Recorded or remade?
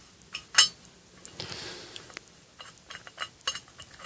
recorded